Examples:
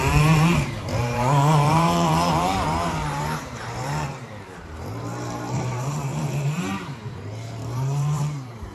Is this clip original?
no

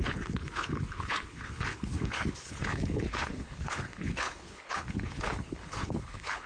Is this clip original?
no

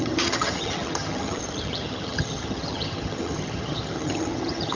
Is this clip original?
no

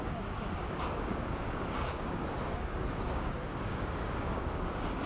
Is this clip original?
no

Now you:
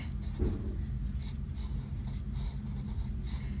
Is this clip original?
yes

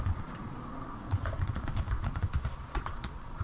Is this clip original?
no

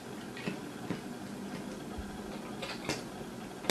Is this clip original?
yes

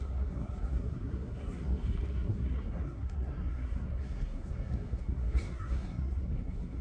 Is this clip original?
no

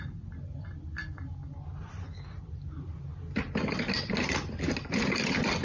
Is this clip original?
yes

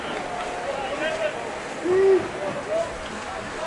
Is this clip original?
yes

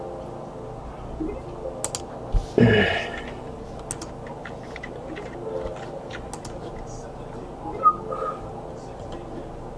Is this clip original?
yes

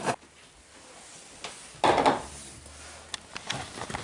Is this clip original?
yes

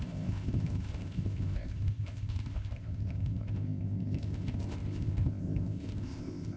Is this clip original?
no